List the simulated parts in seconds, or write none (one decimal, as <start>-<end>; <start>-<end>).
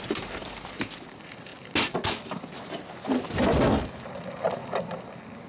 none